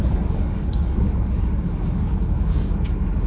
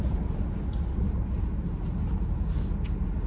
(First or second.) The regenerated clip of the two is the first